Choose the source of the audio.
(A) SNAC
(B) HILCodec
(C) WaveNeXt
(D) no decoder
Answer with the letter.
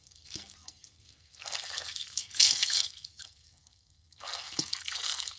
A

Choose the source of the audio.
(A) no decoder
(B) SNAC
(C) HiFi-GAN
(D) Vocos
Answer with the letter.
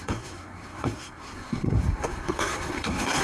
B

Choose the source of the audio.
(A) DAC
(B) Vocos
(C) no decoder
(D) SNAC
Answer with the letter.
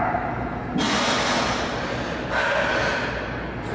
C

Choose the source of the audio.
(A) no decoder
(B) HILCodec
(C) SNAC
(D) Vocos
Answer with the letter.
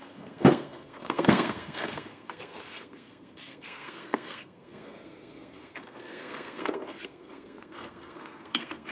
C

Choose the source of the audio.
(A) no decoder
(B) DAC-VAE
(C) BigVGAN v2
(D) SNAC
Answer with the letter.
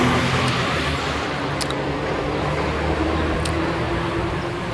A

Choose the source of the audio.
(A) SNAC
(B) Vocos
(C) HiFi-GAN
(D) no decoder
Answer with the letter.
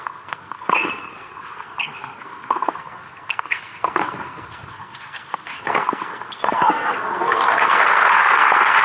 A